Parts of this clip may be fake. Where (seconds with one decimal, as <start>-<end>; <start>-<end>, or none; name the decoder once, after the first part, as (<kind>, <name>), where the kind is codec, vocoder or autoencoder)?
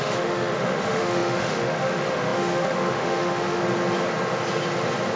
0.0-3.6 (autoencoder, DAC-VAE)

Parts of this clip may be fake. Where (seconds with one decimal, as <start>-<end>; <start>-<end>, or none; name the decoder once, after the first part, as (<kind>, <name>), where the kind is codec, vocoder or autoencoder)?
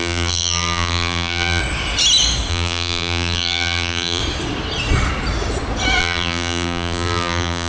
0.0-1.6 (vocoder, BigVGAN v2); 2.5-4.2; 6.0-7.7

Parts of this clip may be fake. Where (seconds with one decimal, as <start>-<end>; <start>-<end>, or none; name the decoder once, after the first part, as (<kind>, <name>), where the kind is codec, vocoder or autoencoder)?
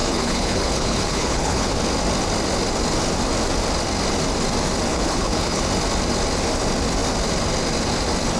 0.0-1.7 (codec, HILCodec); 4.9-5.6